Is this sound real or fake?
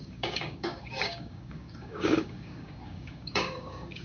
fake